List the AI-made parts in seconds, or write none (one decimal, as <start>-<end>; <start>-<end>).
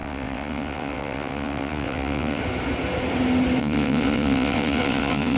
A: 0.0-2.4; 3.6-5.4